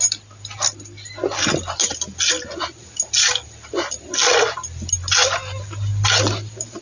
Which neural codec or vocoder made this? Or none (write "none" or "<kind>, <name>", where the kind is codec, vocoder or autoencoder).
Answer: none